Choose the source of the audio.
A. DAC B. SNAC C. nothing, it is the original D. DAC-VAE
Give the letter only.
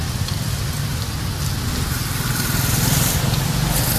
C